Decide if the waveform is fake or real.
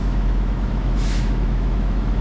fake